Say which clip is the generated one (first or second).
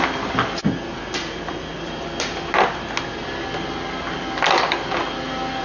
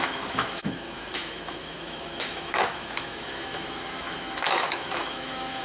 second